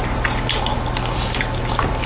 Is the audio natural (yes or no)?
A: yes